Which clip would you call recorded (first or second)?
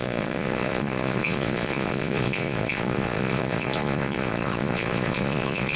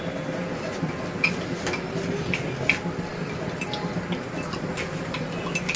second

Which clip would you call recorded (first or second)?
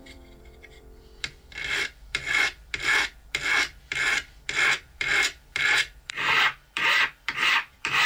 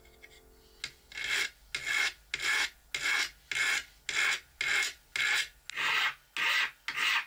second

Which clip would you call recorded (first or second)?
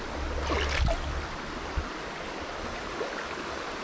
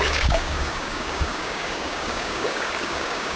first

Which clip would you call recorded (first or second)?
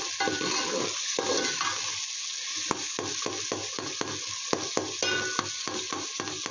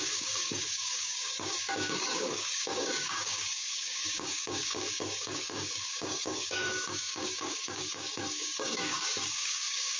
first